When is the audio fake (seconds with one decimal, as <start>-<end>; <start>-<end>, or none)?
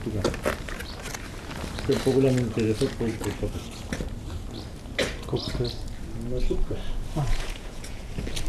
7.2-8.1